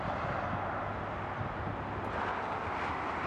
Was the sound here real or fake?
real